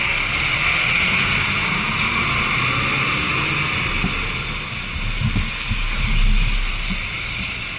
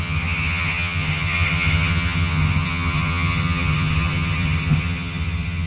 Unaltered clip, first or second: first